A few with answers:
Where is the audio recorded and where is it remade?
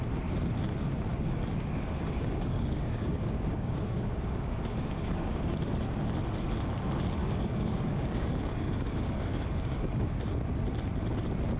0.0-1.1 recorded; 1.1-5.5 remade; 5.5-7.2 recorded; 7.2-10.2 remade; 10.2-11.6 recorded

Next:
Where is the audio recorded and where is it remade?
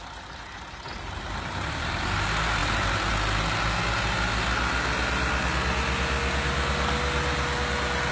0.0-8.1 recorded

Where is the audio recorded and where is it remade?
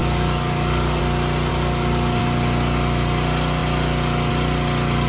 0.0-1.0 remade; 1.0-1.5 recorded; 1.5-2.2 remade; 2.2-5.1 recorded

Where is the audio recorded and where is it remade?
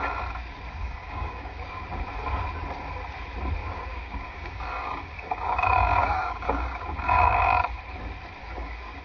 0.0-0.8 recorded; 0.8-1.8 remade; 1.8-3.6 recorded; 3.6-7.8 remade; 7.8-8.4 recorded; 8.4-9.0 remade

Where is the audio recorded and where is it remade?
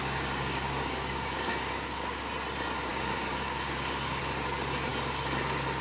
0.0-1.5 remade; 1.5-2.9 recorded; 2.9-4.2 remade; 4.2-5.8 recorded